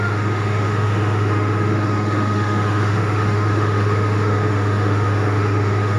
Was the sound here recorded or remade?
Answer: remade